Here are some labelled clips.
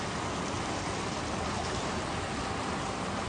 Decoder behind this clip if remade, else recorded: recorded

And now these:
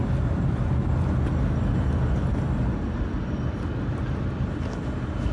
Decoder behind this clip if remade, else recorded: recorded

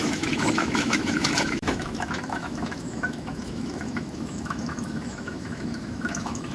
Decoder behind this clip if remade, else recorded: remade, autoencoder, DAC-VAE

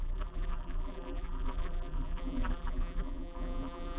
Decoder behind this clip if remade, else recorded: remade, vocoder, BigVGAN v2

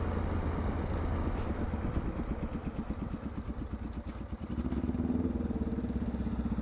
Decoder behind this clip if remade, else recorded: recorded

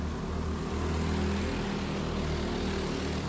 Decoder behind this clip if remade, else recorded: recorded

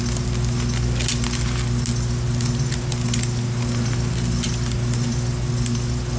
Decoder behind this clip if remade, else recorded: recorded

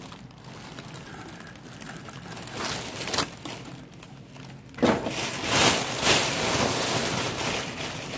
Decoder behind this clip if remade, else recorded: recorded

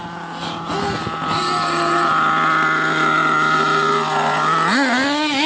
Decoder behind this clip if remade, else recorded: recorded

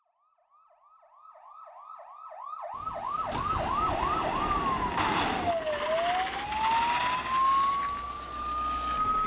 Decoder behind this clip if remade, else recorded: recorded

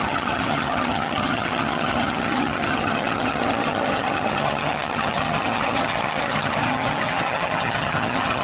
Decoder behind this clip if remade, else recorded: remade, vocoder, HiFi-GAN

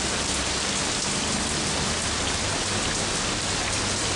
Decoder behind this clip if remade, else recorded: recorded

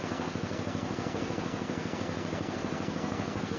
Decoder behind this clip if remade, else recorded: remade, codec, SNAC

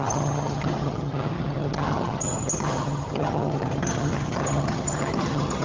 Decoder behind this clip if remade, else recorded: remade, vocoder, HiFi-GAN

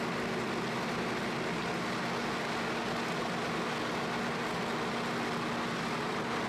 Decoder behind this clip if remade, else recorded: recorded